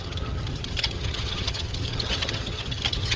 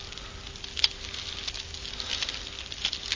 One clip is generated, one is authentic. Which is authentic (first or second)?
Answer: second